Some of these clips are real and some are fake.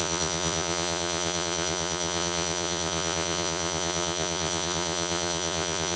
fake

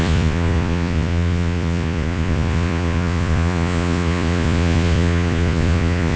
fake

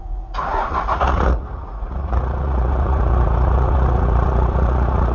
fake